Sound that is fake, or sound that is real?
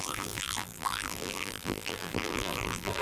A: fake